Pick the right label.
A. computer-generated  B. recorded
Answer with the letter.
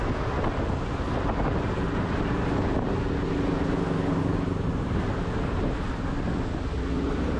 B